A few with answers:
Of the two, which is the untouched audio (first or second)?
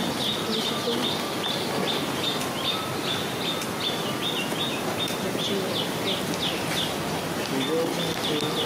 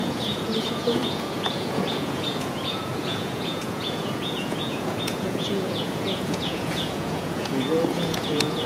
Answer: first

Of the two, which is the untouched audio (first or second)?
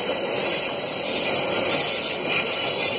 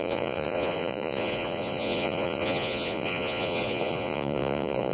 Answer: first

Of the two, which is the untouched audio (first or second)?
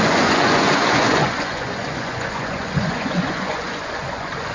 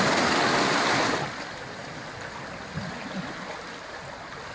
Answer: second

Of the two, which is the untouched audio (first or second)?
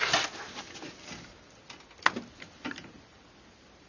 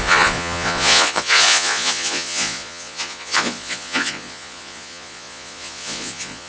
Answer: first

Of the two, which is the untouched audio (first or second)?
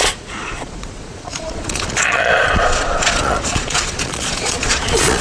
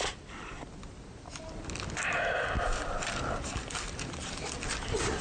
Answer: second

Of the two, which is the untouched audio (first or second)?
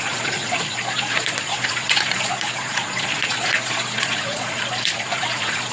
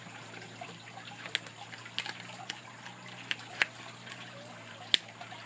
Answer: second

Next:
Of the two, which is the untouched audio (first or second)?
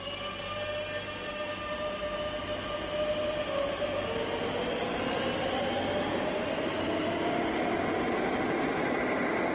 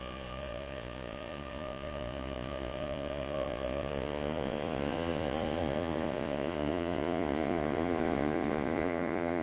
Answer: first